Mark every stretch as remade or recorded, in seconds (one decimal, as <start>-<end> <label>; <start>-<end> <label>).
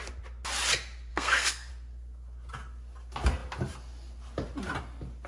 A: 0.0-1.1 recorded; 1.1-1.7 remade; 1.7-5.3 recorded